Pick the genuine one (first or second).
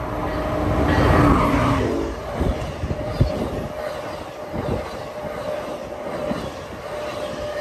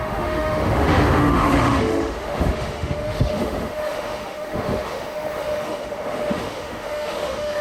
first